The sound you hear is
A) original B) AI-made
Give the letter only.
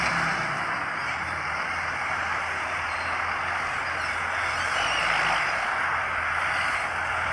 A